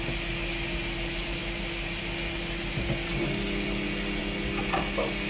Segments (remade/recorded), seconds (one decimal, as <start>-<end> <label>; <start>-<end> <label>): 0.0-5.3 recorded